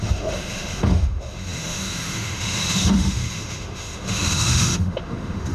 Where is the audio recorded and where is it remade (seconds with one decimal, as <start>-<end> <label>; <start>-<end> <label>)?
0.0-5.5 remade